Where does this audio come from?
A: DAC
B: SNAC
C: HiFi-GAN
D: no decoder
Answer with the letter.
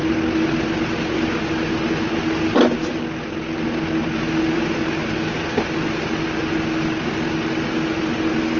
D